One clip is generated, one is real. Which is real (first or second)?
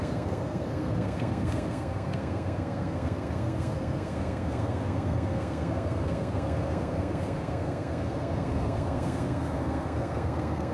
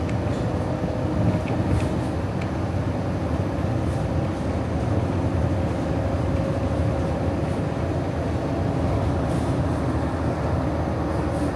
second